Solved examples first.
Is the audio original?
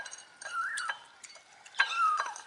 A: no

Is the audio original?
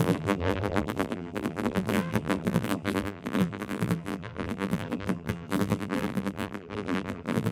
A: no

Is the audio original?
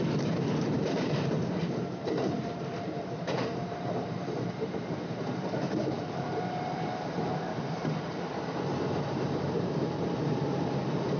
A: no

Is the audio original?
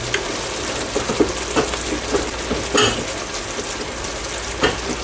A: yes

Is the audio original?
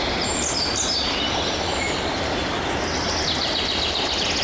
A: yes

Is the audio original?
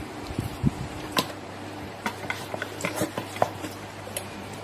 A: no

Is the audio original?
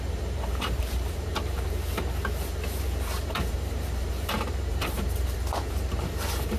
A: no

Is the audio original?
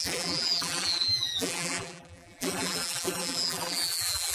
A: no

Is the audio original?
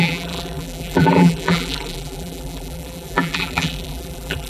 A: no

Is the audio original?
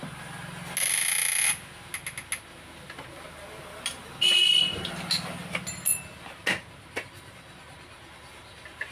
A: yes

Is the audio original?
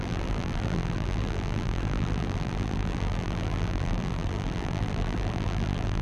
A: no